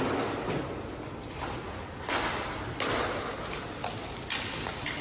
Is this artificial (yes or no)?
no